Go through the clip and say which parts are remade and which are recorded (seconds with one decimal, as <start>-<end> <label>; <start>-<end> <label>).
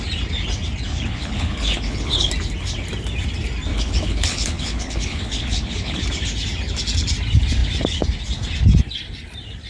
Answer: 0.0-0.9 recorded; 0.9-2.3 remade; 2.3-3.7 recorded; 3.7-6.0 remade; 6.0-9.7 recorded